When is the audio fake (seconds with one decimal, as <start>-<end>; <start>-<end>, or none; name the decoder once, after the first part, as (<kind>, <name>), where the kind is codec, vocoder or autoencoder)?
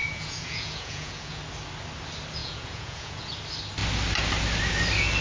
0.0-1.4 (vocoder, Vocos); 2.4-3.4